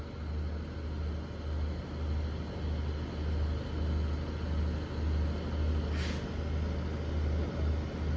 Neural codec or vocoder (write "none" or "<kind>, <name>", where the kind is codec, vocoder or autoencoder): none